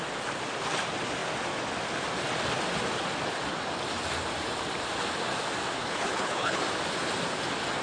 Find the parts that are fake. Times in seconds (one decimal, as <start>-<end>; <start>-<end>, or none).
5.8-6.6